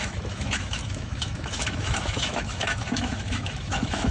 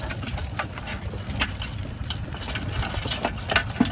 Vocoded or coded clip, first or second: first